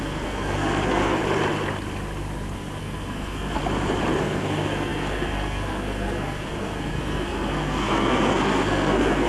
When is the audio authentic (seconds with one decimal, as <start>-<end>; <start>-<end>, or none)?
1.2-2.8; 3.6-4.2